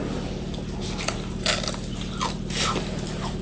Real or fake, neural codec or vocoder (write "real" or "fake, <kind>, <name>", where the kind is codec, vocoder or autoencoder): real